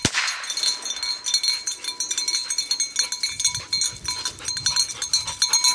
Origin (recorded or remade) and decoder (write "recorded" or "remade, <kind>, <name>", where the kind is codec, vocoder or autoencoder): recorded